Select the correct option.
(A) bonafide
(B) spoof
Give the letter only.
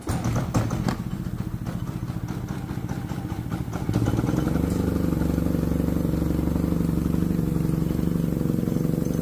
A